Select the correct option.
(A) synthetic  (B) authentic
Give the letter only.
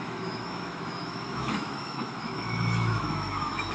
A